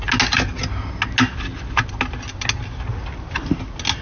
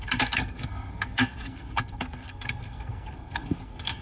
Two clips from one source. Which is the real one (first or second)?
first